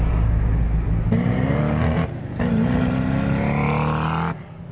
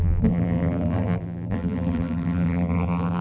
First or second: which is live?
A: first